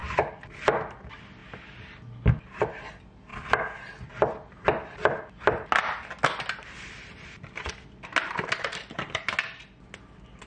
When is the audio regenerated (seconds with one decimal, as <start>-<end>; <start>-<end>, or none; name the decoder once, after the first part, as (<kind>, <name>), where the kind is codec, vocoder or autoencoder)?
0.0-0.7 (vocoder, BigVGAN v2)